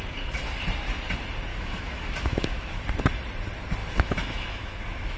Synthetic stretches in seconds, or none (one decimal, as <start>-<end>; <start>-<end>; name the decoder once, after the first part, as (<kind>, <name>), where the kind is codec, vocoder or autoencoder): 1.5-2.8 (autoencoder, DAC-VAE); 3.8-5.2